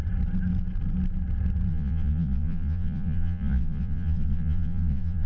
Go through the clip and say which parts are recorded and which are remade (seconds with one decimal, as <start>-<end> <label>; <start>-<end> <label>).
0.0-1.7 recorded; 1.7-5.3 remade